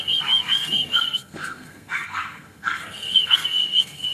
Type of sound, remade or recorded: remade